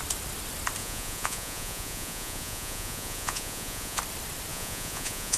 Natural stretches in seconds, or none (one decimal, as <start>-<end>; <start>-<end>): 0.0-0.8; 4.0-4.5